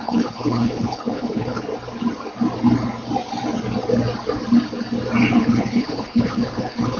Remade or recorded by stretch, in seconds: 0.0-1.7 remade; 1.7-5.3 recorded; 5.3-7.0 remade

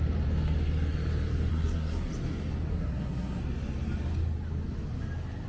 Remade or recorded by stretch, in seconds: 0.0-1.5 recorded; 1.5-2.1 remade; 2.1-2.7 recorded; 2.7-3.4 remade; 3.4-5.5 recorded